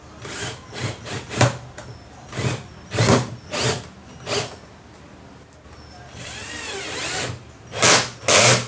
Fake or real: real